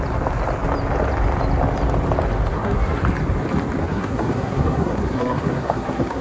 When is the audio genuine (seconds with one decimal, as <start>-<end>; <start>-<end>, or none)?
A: 0.0-2.5; 3.0-3.8